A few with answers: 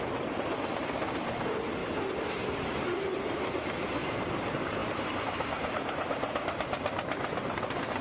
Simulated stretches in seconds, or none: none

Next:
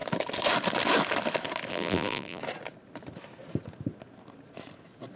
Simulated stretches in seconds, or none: 1.7-2.4 (vocoder, BigVGAN v2)

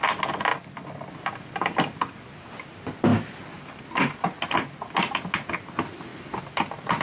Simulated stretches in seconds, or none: 0.5-1.1 (vocoder, BigVGAN v2); 3.1-5.3; 6.1-7.0

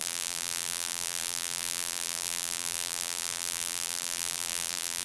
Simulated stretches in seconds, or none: 0.0-5.0 (vocoder, BigVGAN v2)